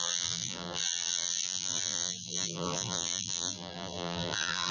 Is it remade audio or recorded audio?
remade